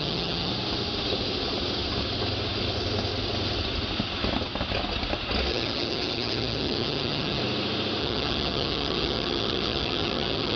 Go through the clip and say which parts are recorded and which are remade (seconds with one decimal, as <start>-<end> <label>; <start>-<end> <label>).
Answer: 0.0-0.5 remade; 0.5-5.5 recorded; 5.5-7.4 remade; 7.4-8.0 recorded; 8.0-10.6 remade